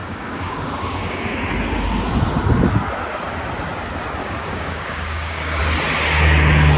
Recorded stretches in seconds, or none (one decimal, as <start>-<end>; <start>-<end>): 1.5-4.2; 5.6-6.8